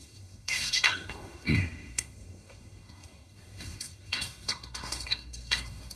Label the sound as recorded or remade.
remade